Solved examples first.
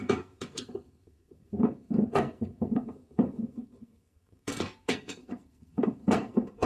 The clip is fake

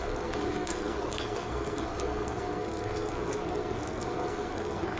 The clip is fake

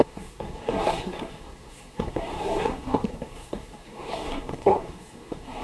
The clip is fake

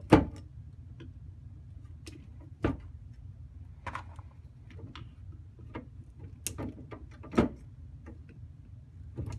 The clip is real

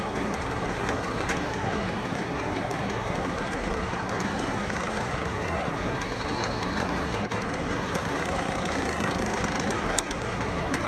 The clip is fake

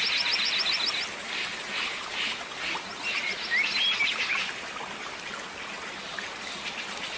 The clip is real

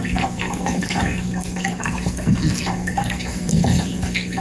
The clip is fake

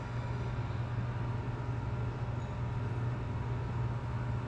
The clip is real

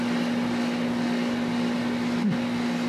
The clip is real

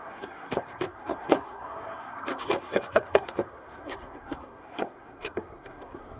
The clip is fake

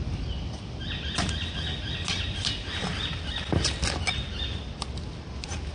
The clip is real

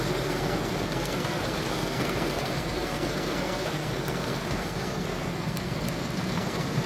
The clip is fake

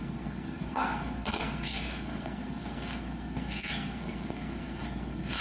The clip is fake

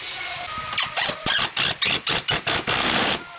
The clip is real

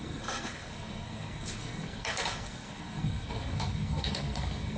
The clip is fake